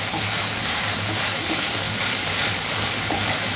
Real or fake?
fake